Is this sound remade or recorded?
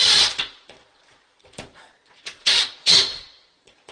remade